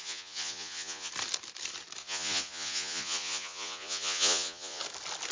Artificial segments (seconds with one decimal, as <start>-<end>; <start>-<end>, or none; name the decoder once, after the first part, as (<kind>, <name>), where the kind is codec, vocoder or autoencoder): 0.0-1.1 (vocoder, Vocos); 2.0-4.8

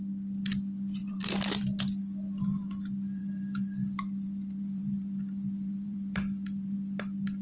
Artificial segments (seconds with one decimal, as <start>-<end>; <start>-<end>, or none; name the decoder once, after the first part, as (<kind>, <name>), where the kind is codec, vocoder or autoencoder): 1.0-1.6 (vocoder, BigVGAN v2); 3.2-7.0

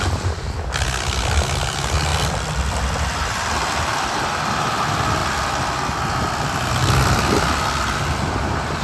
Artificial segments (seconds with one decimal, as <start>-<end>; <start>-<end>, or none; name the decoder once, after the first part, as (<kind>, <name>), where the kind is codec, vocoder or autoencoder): 2.1-2.8 (vocoder, BigVGAN v2); 5.2-6.7